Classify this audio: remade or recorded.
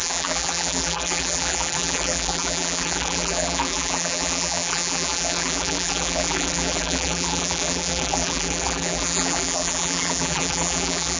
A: remade